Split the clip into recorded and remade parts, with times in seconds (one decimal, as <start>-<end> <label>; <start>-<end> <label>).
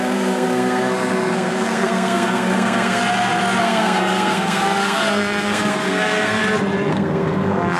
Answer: 0.0-3.0 remade; 3.0-3.6 recorded; 3.6-6.4 remade; 6.4-6.9 recorded; 6.9-7.8 remade